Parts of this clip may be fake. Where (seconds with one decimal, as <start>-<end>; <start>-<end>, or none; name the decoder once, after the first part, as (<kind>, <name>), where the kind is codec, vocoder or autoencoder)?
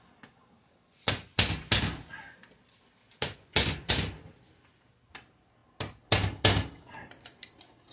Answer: 0.9-1.4 (vocoder, Vocos); 3.0-3.9